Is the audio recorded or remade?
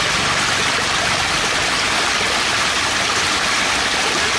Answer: recorded